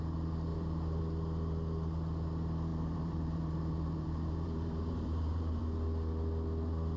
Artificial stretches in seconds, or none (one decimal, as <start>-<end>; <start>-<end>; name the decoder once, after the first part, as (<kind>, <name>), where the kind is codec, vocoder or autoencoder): 0.5-1.0 (vocoder, BigVGAN v2); 2.7-5.6